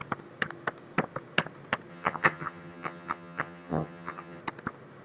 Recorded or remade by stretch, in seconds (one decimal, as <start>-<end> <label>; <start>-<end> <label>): 0.0-1.9 recorded; 1.9-4.4 remade; 4.4-5.0 recorded